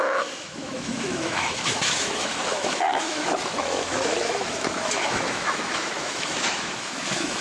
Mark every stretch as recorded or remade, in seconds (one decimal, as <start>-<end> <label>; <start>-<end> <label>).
0.0-7.4 remade